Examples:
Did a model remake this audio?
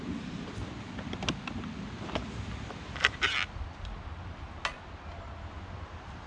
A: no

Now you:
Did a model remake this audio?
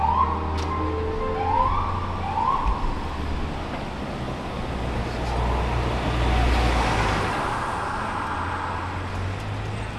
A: no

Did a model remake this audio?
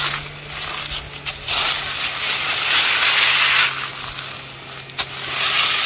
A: no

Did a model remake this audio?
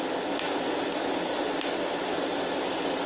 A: no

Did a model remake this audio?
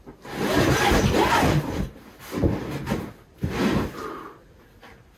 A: no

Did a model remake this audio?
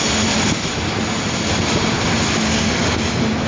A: no